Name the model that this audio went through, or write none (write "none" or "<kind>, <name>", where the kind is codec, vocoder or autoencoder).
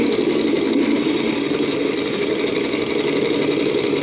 none